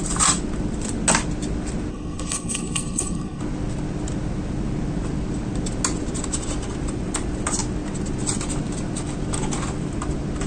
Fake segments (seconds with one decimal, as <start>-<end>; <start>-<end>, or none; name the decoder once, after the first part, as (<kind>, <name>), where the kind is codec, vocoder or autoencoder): 1.9-3.4 (codec, SNAC)